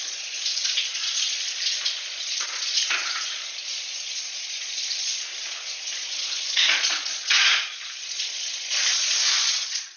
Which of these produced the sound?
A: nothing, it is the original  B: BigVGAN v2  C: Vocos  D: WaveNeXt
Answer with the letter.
C